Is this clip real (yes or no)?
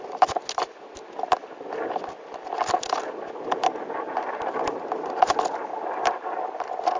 yes